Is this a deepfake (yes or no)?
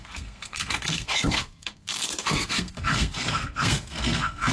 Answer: yes